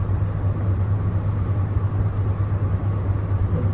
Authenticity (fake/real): real